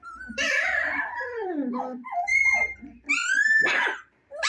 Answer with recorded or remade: remade